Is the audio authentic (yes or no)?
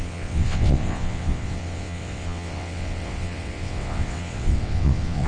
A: no